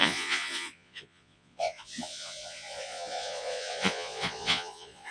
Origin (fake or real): fake